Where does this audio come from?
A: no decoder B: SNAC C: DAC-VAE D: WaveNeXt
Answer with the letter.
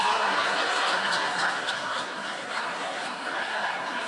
B